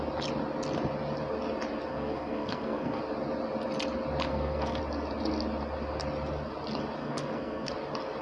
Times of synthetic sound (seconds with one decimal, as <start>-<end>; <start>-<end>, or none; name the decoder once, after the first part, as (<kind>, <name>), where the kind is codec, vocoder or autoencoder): 1.9-3.0 (codec, SNAC); 4.3-4.8; 7.0-7.7

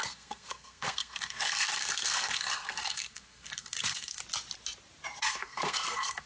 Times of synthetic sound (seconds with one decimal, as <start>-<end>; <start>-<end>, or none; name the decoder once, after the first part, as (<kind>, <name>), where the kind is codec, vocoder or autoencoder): 0.0-4.2 (codec, SNAC); 5.2-6.3